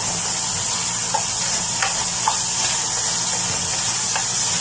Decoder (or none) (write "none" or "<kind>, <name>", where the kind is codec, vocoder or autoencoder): none